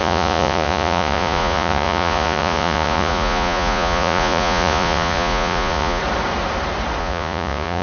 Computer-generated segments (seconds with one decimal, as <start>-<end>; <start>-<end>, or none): 0.0-6.0; 7.0-7.8